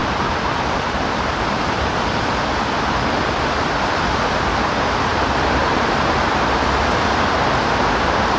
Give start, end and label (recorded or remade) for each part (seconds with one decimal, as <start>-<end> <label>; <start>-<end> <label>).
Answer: 0.0-5.1 remade; 5.1-5.6 recorded; 5.6-8.4 remade